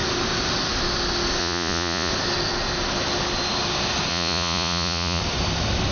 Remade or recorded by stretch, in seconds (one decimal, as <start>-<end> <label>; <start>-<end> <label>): 0.0-1.4 recorded; 1.4-2.1 remade; 2.1-4.1 recorded; 4.1-5.2 remade; 5.2-5.9 recorded